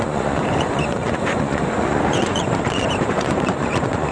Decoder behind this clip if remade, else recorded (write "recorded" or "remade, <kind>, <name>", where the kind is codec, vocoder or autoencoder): remade, vocoder, Vocos